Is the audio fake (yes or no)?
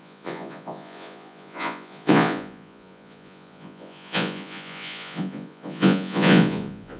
yes